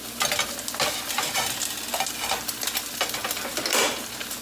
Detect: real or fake real